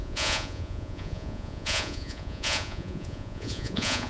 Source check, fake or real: fake